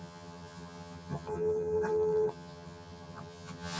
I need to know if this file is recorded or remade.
remade